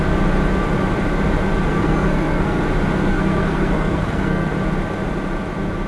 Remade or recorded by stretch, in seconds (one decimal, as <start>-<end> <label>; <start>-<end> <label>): 0.0-1.7 recorded; 1.7-2.6 remade; 2.6-3.1 recorded; 3.1-4.5 remade; 4.5-5.9 recorded